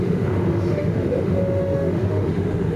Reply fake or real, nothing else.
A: fake